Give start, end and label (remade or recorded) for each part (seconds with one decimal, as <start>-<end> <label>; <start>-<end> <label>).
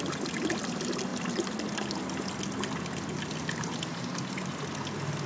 0.0-5.3 recorded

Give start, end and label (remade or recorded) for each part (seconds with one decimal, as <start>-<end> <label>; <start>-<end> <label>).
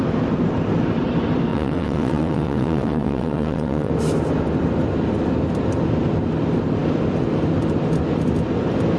0.0-1.5 recorded; 1.5-3.9 remade; 3.9-9.0 recorded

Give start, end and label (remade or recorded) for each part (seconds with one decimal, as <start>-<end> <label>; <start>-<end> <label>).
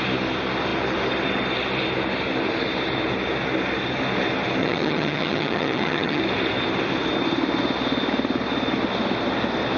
0.0-4.6 recorded; 4.6-6.2 remade; 6.2-9.8 recorded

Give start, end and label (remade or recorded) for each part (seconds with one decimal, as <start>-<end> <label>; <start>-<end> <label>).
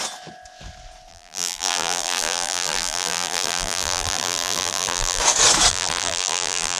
0.0-1.1 recorded; 1.1-5.2 remade; 5.2-5.7 recorded; 5.7-6.8 remade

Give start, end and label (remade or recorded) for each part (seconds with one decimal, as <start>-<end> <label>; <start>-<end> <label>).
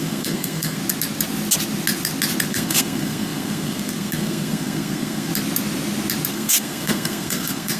0.0-0.8 remade; 0.8-2.5 recorded; 2.5-5.3 remade; 5.3-6.3 recorded; 6.3-7.8 remade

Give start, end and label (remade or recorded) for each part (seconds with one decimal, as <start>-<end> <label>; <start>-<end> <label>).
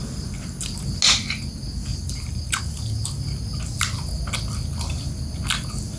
0.0-1.9 recorded; 1.9-2.6 remade; 2.6-6.0 recorded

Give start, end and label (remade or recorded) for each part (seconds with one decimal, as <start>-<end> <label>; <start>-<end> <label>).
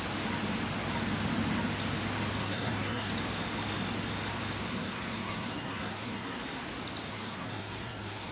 0.0-2.4 recorded; 2.4-3.1 remade; 3.1-4.7 recorded; 4.7-6.4 remade; 6.4-7.1 recorded; 7.1-8.3 remade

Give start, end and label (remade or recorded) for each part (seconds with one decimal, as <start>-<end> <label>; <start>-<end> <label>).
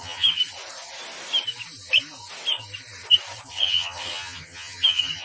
0.0-0.4 remade; 0.4-3.5 recorded; 3.5-5.2 remade